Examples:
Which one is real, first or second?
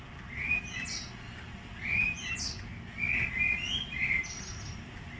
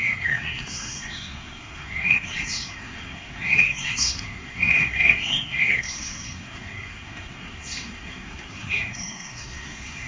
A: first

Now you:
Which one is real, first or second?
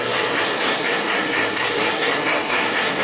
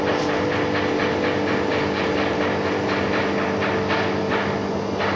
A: second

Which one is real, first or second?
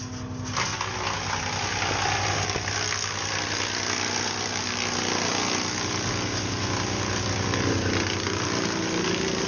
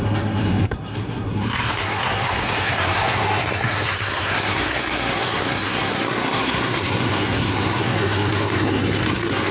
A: first